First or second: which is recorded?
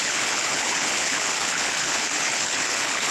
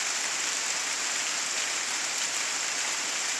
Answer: second